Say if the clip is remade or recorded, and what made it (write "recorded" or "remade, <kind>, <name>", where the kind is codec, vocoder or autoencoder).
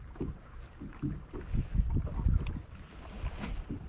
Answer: recorded